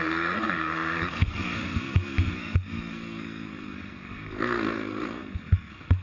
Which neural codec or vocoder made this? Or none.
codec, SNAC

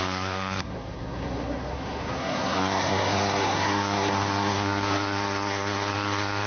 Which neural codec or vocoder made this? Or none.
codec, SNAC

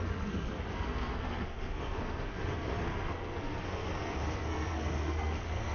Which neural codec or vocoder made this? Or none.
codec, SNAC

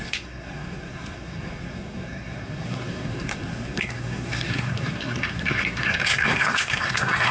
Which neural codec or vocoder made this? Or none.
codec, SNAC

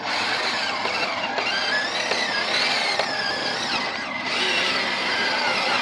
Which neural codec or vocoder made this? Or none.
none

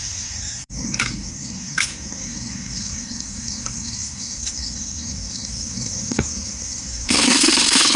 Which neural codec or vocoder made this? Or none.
codec, SNAC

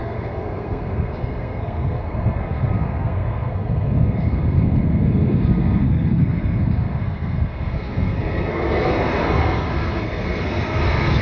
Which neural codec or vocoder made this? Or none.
codec, SNAC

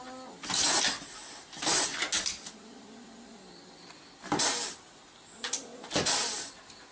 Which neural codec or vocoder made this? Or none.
none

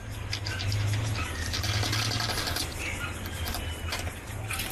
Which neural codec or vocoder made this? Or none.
none